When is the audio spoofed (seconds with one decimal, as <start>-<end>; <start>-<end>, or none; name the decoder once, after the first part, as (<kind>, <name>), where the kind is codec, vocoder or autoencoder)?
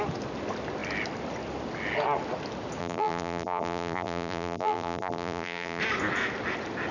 2.8-5.8 (vocoder, BigVGAN v2)